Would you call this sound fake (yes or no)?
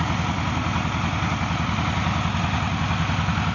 no